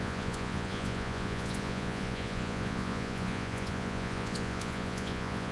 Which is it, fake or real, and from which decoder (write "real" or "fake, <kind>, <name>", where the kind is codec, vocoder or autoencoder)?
fake, vocoder, Vocos